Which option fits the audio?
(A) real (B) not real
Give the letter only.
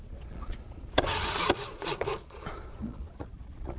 B